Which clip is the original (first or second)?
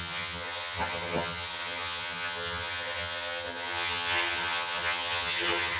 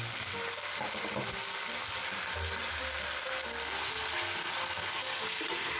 second